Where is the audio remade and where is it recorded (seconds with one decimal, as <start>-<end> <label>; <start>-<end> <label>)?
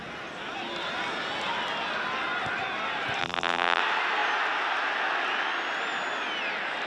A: 0.0-3.2 recorded; 3.2-3.8 remade; 3.8-6.9 recorded